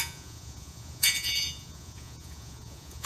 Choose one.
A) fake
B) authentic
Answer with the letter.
A